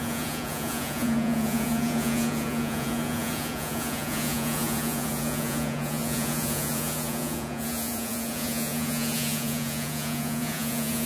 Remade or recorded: remade